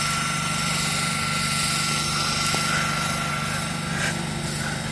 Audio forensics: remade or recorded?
recorded